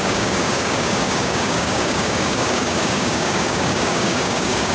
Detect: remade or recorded remade